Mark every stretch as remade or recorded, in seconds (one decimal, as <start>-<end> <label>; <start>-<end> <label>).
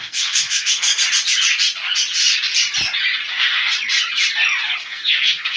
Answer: 0.0-0.9 remade; 0.9-3.3 recorded; 3.3-3.7 remade; 3.7-4.8 recorded; 4.8-5.6 remade